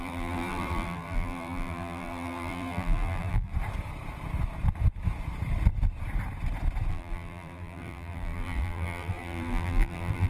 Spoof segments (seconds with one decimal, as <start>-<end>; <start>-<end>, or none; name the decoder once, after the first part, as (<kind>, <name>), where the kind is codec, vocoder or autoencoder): 0.0-3.5 (vocoder, BigVGAN v2); 6.9-10.3